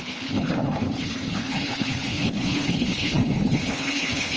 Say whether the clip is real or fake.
fake